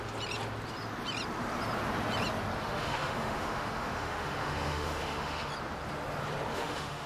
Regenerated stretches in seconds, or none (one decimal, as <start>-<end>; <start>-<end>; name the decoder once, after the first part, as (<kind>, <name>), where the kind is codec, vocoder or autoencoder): 2.6-5.5 (autoencoder, DAC-VAE); 6.5-7.1